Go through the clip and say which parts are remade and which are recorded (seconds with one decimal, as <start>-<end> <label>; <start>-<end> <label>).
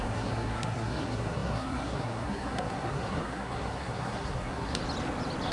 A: 0.0-4.8 remade; 4.8-5.5 recorded